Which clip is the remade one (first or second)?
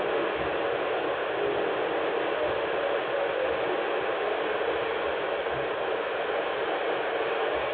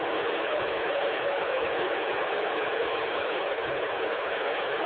second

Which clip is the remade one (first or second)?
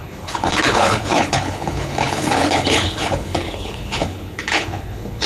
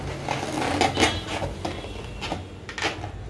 first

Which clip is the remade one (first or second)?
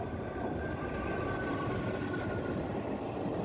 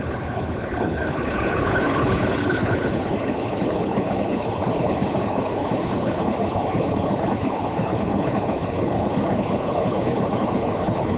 second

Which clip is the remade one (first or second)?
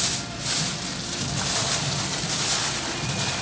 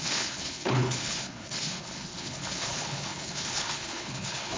second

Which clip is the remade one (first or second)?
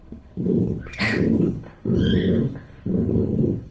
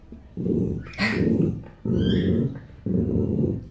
first